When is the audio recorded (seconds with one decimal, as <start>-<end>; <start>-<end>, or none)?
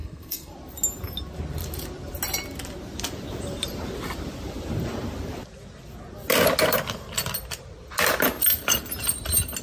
0.5-9.6